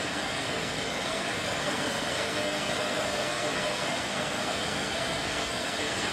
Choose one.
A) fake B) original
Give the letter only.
A